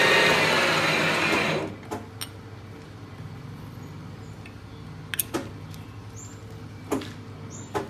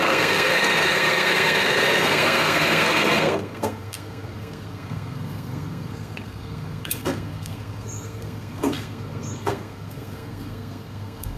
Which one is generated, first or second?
second